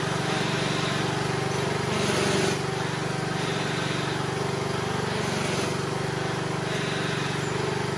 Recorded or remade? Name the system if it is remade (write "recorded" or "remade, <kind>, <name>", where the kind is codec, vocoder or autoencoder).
recorded